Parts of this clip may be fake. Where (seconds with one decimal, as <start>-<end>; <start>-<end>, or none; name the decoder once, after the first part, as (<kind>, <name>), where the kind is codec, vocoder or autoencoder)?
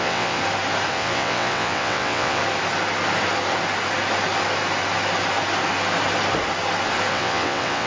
0.0-0.4 (vocoder, WaveNeXt); 0.9-2.4; 7.1-7.9